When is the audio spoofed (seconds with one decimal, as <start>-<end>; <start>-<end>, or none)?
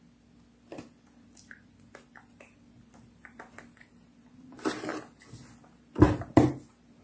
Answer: none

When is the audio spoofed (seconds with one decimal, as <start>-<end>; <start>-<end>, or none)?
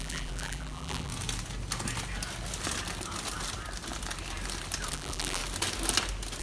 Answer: 0.0-1.1; 4.9-5.4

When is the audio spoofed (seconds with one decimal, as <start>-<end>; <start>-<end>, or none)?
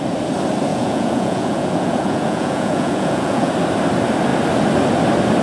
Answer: 0.7-3.5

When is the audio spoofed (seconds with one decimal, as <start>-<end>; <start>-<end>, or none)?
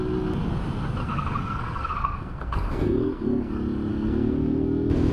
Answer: 1.0-3.5; 3.9-5.1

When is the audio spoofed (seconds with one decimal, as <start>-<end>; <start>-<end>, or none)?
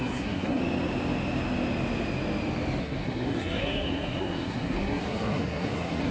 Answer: 0.0-0.6; 2.8-6.1